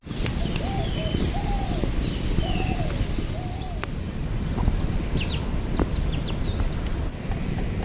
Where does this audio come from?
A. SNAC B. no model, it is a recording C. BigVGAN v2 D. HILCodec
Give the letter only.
B